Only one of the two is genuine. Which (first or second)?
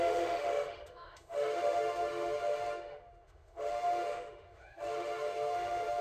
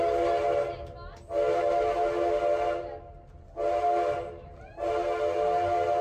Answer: second